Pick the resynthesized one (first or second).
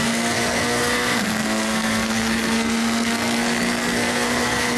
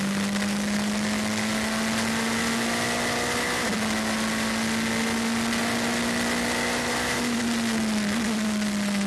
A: first